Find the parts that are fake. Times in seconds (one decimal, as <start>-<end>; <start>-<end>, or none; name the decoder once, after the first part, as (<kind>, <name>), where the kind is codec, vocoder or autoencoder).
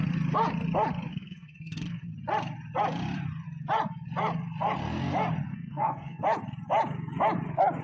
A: 1.1-2.1 (codec, SNAC); 5.5-6.2